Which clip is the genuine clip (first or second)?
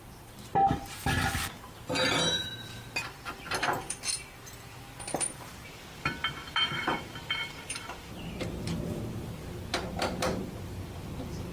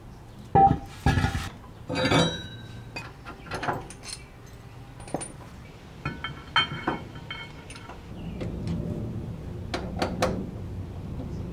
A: second